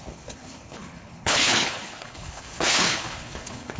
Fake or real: fake